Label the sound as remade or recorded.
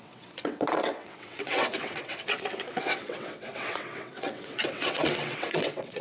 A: remade